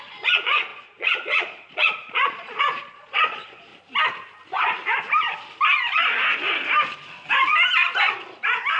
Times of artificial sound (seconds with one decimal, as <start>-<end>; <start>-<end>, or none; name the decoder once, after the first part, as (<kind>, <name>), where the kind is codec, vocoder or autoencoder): 0.0-3.7 (vocoder, Vocos)